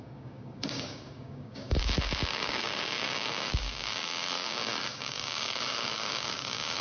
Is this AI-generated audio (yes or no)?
yes